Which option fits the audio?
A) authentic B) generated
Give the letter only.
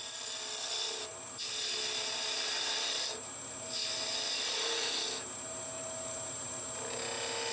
A